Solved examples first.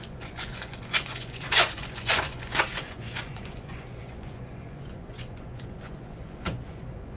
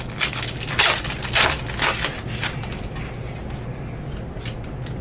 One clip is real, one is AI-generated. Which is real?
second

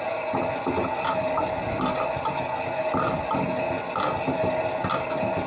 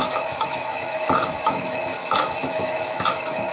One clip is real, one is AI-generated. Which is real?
first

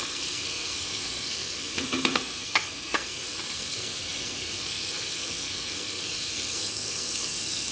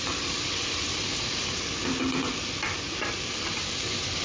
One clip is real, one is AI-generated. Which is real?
second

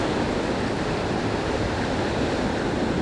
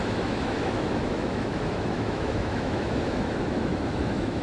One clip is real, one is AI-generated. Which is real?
first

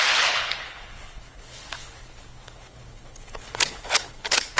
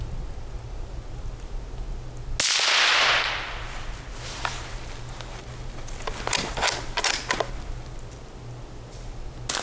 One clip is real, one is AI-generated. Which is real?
second